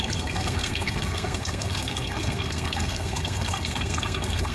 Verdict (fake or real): fake